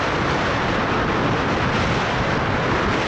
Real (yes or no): yes